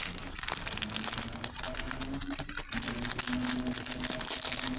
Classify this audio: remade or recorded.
recorded